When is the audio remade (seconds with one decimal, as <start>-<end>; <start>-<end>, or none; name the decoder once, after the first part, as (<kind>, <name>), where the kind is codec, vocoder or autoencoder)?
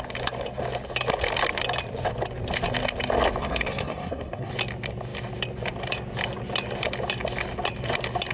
3.4-4.5 (codec, SNAC)